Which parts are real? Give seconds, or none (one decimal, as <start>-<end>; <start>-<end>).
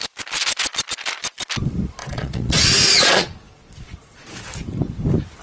0.0-2.0; 4.4-5.4